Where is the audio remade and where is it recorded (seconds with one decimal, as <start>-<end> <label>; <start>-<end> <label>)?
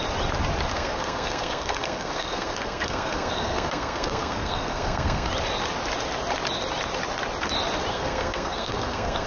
0.0-0.7 recorded; 0.7-5.3 remade; 5.3-7.9 recorded; 7.9-9.3 remade